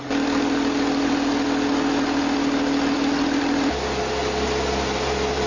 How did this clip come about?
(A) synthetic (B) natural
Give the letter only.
B